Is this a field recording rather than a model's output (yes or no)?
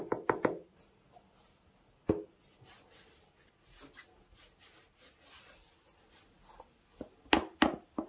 yes